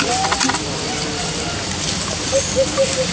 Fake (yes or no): no